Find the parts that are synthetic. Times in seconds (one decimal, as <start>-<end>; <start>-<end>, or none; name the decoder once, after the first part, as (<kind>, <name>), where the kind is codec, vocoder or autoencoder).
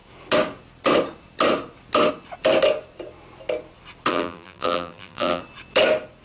4.1-5.4 (vocoder, BigVGAN v2)